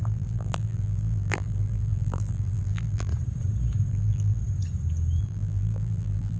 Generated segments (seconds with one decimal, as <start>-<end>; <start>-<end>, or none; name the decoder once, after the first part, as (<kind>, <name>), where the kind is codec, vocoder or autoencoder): 0.0-3.1 (vocoder, BigVGAN v2); 3.9-4.4; 5.2-6.4